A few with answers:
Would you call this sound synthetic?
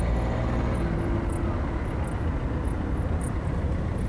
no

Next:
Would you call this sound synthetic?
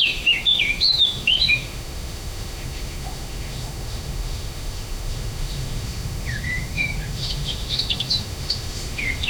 yes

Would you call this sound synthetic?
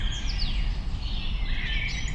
no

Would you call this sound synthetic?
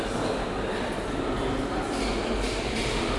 no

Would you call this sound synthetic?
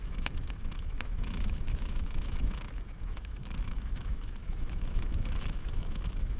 yes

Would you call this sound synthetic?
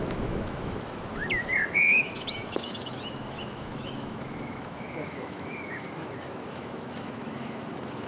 yes